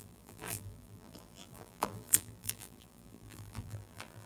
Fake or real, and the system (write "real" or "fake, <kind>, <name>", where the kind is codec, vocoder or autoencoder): fake, vocoder, BigVGAN v2